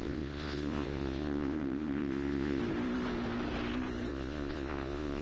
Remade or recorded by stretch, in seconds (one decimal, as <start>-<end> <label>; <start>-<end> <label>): 0.0-2.6 remade; 2.6-4.1 recorded; 4.1-5.2 remade